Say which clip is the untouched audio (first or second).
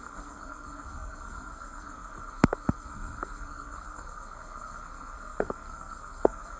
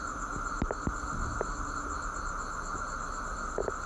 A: second